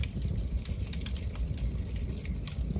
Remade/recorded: recorded